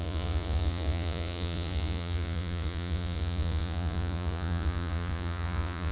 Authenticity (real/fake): fake